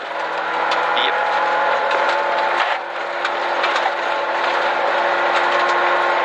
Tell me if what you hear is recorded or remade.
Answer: recorded